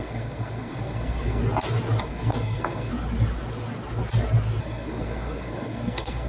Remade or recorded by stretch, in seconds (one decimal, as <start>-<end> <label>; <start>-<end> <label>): 0.0-1.4 remade; 1.4-2.0 recorded; 2.0-2.9 remade; 2.9-4.6 recorded; 4.6-6.3 remade